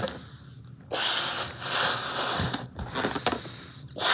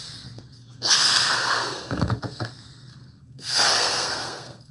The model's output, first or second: second